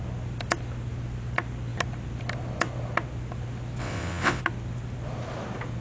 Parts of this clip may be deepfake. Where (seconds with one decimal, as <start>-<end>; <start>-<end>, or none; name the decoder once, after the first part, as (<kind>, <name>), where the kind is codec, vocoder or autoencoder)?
3.8-4.4 (vocoder, WaveNeXt)